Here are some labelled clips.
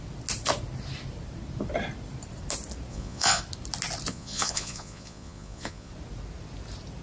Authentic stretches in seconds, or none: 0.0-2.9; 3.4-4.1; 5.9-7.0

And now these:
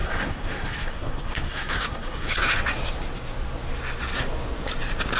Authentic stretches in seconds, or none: 2.3-5.2

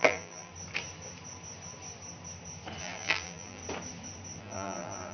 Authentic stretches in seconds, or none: 0.5-2.8; 3.6-4.4

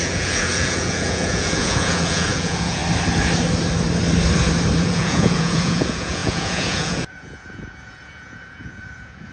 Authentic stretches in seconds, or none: 2.8-4.8

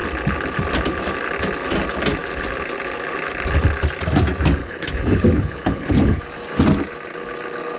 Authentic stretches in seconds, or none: 0.0-4.6; 6.2-7.8